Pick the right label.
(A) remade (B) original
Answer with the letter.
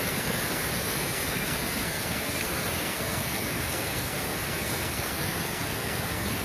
A